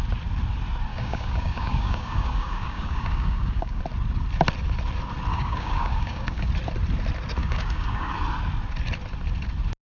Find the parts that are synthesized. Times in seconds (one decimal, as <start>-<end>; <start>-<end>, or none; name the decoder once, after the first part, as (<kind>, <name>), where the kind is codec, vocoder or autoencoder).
0.9-3.8 (codec, DAC); 5.3-6.5; 7.4-8.1